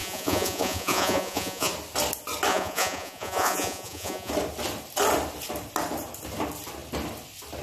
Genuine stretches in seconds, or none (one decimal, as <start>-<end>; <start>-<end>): 1.7-2.5; 4.3-7.6